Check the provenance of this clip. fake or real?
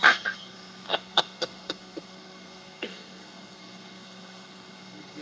fake